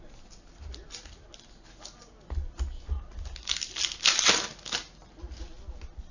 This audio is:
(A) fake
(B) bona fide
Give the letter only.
B